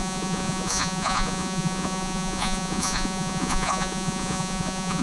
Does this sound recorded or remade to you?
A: remade